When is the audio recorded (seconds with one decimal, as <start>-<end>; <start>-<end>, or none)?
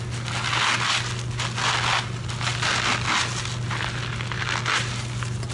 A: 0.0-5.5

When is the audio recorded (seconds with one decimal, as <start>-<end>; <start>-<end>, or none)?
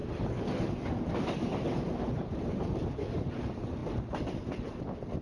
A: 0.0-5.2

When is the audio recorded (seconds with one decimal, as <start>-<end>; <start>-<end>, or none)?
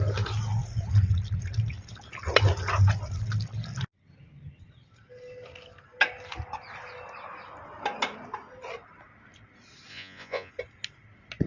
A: 0.0-9.9; 10.5-11.5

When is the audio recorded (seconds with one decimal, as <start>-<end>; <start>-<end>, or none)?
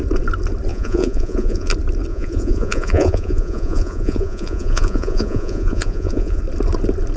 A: 0.0-0.7; 1.7-2.1; 6.4-7.2